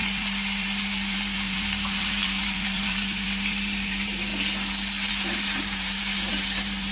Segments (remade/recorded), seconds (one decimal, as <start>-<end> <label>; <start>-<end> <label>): 0.0-4.3 remade; 4.3-5.1 recorded; 5.1-6.9 remade